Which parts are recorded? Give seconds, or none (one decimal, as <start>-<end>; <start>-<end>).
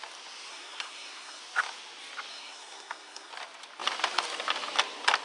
0.0-0.5; 1.4-2.3; 3.3-5.2